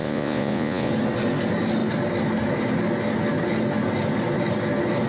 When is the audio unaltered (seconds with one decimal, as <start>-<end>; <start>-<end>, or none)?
0.9-5.1